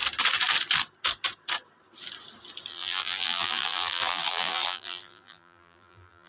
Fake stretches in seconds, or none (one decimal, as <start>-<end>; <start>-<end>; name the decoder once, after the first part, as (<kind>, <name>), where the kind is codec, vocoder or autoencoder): 2.7-6.3 (vocoder, BigVGAN v2)